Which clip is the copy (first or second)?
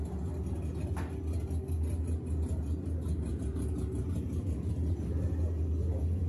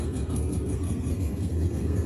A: second